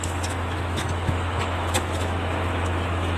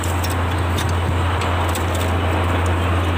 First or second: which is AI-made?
first